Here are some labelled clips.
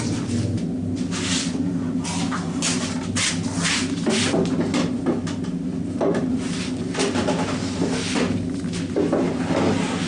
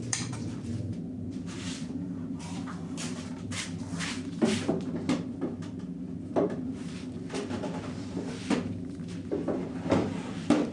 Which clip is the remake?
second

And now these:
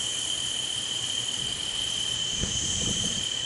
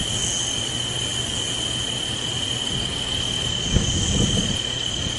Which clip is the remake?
first